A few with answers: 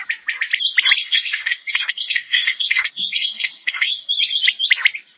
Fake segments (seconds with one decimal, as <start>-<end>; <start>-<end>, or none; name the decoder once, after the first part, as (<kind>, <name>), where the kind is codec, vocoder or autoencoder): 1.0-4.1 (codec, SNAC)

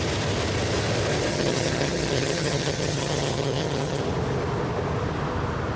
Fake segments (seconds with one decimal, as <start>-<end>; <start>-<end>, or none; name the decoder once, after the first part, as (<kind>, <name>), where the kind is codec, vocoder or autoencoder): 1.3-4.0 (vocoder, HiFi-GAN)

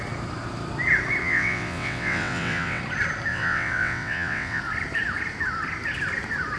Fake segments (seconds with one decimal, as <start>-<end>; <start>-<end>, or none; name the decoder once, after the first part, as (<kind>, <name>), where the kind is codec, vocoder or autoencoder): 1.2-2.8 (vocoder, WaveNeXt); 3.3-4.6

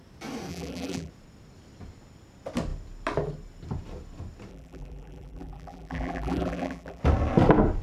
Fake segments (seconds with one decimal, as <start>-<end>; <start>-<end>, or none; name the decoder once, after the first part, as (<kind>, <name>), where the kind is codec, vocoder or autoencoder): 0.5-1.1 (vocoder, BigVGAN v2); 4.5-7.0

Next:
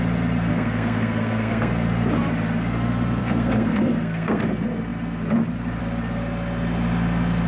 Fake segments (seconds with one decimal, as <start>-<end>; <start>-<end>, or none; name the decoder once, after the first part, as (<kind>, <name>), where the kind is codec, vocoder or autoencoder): 0.5-1.7 (codec, SNAC); 3.2-4.4

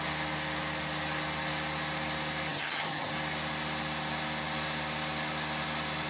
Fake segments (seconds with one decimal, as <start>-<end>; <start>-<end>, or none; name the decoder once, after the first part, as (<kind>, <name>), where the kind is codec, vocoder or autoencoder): 2.5-3.1 (vocoder, HiFi-GAN)